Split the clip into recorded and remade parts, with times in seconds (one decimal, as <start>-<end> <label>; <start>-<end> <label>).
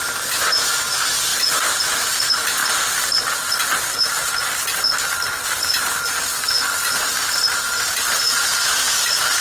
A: 0.0-1.3 recorded; 1.3-2.1 remade; 2.1-9.4 recorded